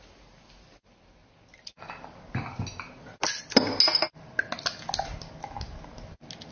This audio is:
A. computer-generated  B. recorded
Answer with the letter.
B